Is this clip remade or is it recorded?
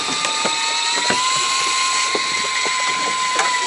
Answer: recorded